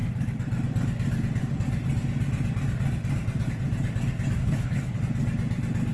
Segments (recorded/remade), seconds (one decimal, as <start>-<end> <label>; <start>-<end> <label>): 0.0-4.4 recorded; 4.4-5.0 remade; 5.0-5.9 recorded